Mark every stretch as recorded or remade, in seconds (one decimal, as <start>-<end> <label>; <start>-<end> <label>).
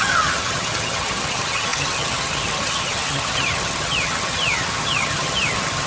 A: 0.0-5.9 remade